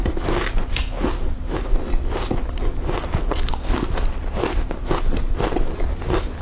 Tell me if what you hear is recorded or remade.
recorded